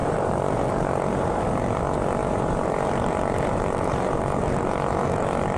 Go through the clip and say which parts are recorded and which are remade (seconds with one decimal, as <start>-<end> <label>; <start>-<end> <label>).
0.0-1.8 remade; 1.8-2.2 recorded; 2.2-4.4 remade; 4.4-5.6 recorded